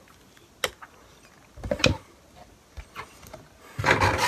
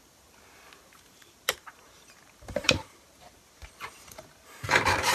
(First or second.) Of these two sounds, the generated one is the second